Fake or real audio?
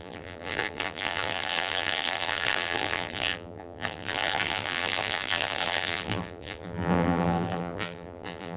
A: fake